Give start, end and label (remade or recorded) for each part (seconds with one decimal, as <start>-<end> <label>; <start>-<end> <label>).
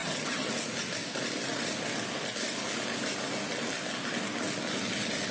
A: 0.0-0.5 remade; 0.5-5.3 recorded